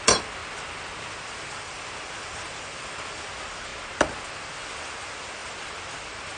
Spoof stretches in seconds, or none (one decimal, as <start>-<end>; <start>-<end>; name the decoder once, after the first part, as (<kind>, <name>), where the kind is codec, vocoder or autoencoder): 0.0-0.4 (vocoder, BigVGAN v2); 1.1-3.7; 4.3-6.4